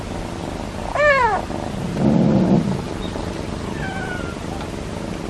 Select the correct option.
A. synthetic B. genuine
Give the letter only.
B